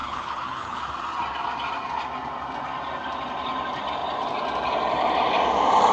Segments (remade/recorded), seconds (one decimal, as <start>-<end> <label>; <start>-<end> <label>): 0.0-0.8 remade; 0.8-5.9 recorded